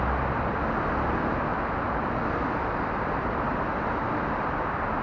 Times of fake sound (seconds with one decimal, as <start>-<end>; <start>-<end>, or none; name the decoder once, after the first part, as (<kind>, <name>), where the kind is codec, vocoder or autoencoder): 1.5-4.5 (vocoder, BigVGAN v2)

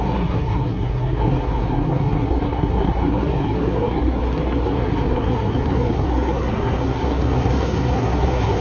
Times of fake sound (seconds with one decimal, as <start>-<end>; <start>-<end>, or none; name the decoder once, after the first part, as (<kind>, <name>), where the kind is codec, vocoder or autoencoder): 0.0-8.6 (codec, SNAC)

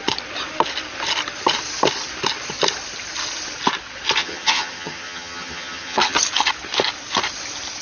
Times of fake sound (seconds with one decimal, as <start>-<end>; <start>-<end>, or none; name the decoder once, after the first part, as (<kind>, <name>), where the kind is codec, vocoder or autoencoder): 4.2-6.2 (vocoder, HiFi-GAN)